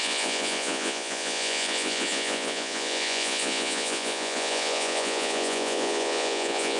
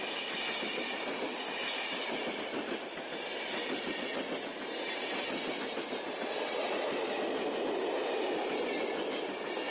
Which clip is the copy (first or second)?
first